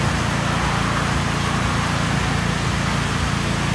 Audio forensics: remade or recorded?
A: recorded